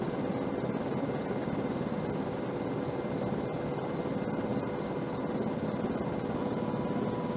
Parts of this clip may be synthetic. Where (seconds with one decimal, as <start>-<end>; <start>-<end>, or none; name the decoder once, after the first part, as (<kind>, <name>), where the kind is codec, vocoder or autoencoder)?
none